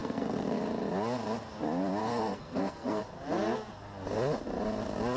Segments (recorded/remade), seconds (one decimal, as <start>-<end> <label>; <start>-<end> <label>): 0.0-0.6 remade; 0.6-2.0 recorded; 2.0-3.0 remade; 3.0-5.2 recorded